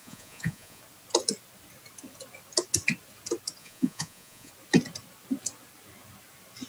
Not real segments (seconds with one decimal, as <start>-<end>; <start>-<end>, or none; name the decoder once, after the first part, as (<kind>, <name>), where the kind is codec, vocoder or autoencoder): 0.0-0.8 (vocoder, Vocos); 3.6-4.5